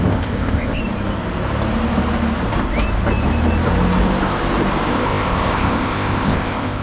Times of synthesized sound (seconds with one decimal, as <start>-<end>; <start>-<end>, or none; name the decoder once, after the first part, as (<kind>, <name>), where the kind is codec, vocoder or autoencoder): 0.0-0.8 (codec, ZipCodec); 4.9-6.8